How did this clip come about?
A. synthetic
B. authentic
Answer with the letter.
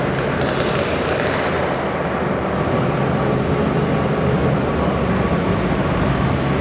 B